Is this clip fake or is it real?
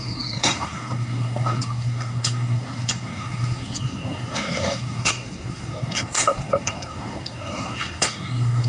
fake